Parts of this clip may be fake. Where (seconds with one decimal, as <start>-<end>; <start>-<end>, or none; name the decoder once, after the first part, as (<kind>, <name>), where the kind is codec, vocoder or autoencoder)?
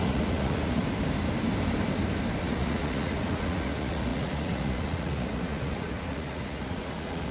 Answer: 0.0-0.8 (vocoder, Vocos); 2.4-7.3